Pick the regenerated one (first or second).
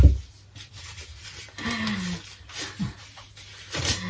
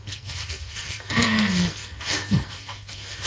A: second